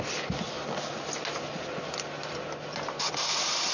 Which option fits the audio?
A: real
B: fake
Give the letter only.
A